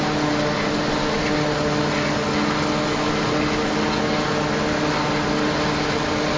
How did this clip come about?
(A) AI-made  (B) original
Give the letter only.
B